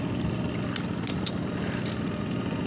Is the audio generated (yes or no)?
no